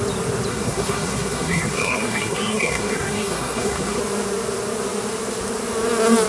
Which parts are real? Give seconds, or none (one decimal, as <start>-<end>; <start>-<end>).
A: 0.0-0.5; 4.0-6.3

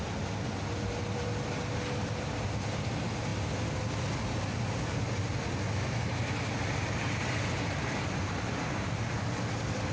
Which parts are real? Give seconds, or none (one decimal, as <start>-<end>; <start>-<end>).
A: 0.0-9.9

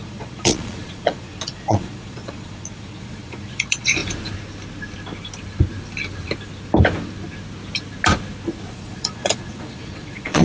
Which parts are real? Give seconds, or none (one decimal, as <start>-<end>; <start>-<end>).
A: 4.0-8.7

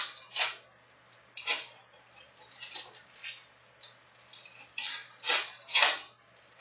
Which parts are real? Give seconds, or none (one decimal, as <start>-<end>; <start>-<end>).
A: 0.0-6.6

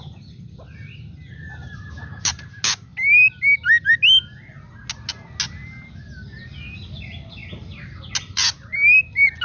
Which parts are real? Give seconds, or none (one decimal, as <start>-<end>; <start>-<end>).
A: 0.0-9.4

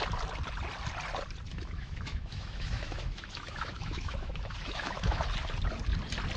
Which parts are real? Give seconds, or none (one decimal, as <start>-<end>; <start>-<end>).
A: 0.0-1.5; 5.2-6.4

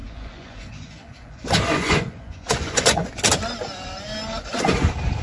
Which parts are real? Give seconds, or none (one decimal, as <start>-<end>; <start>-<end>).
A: 3.1-5.2